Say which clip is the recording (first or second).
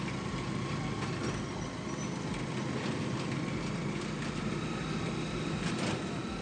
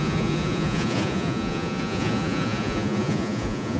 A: first